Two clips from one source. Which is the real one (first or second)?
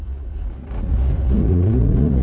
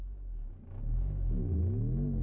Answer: second